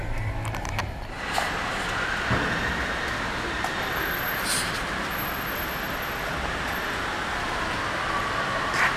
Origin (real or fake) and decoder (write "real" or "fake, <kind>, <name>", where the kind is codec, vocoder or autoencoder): real